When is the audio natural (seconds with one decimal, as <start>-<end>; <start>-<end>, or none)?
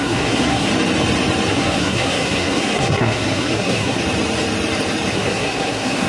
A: 0.7-1.5; 4.0-5.1